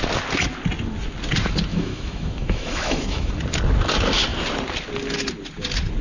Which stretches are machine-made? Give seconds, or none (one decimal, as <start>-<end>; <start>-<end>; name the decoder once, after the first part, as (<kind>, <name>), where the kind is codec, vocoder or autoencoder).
1.7-3.3 (autoencoder, DAC-VAE)